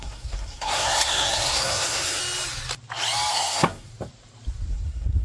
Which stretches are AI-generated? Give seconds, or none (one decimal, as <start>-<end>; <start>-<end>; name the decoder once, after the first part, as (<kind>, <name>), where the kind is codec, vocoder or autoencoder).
0.0-2.2 (codec, SNAC); 3.3-3.9; 4.7-5.2